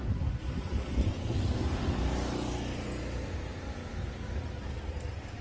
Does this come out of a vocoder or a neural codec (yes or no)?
no